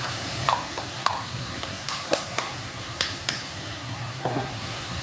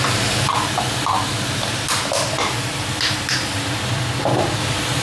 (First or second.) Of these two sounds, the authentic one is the second